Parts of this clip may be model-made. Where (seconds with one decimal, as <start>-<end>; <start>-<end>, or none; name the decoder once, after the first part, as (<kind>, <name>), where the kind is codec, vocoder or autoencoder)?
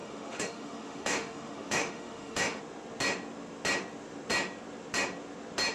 0.0-2.6 (autoencoder, DAC-VAE)